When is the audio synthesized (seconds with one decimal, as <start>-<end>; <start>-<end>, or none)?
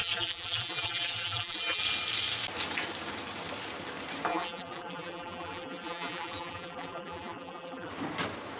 0.0-1.8; 4.3-7.9